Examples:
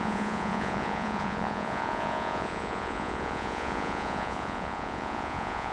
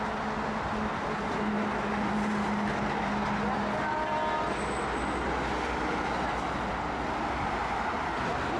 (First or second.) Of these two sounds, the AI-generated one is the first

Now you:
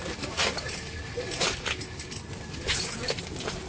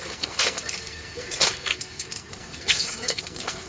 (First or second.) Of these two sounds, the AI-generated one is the second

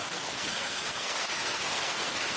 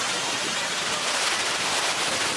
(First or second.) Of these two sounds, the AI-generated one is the first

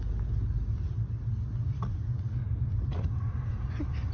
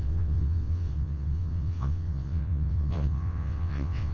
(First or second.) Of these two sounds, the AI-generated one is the second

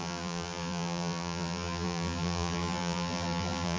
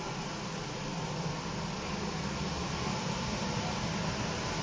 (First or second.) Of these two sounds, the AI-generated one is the first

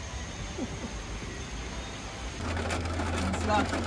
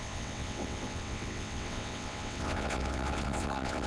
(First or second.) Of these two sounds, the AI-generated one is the second